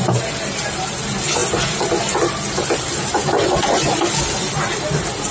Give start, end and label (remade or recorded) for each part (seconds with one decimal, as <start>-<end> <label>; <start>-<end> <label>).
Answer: 0.0-5.3 recorded